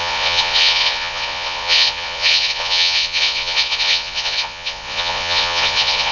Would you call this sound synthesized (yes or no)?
yes